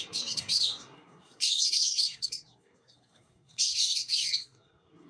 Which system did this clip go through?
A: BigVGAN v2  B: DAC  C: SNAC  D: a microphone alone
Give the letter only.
C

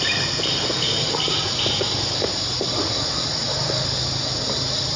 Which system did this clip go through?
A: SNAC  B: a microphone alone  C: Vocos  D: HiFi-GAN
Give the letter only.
B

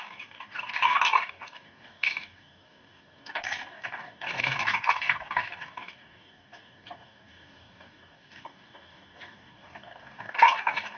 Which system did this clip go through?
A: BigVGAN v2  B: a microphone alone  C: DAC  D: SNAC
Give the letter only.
C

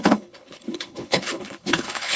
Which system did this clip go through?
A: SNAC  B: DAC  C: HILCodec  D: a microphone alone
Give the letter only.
C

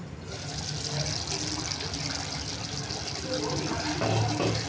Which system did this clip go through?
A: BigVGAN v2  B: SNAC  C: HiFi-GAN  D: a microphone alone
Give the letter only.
D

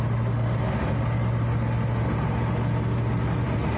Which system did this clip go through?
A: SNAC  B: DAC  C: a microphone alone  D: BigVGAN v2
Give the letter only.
C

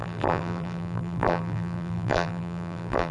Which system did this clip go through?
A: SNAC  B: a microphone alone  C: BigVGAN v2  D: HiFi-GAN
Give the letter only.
C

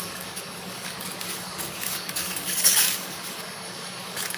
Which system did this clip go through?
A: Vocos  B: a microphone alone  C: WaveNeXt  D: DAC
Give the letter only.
D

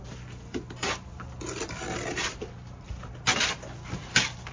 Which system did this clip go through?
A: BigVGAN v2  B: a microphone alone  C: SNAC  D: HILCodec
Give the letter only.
B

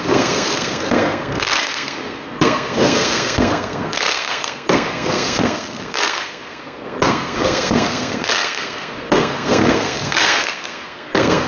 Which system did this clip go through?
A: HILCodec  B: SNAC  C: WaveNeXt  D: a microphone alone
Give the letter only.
B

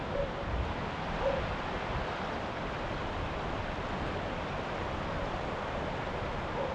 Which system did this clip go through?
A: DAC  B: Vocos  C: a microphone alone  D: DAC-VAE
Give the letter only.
C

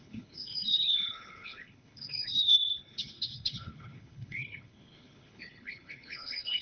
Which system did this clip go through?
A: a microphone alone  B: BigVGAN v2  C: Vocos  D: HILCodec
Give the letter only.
D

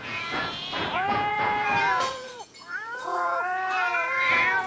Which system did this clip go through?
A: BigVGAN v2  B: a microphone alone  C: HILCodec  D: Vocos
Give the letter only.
D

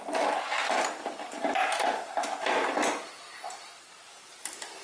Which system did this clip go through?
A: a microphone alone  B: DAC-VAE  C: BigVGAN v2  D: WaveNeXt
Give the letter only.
A